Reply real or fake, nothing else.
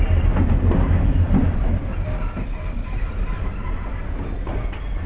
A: real